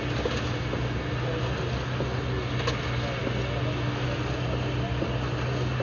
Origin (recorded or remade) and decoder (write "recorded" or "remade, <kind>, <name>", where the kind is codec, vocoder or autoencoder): recorded